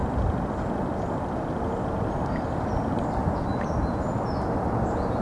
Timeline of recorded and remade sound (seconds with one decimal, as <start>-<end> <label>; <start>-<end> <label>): 0.0-3.5 recorded; 3.5-5.2 remade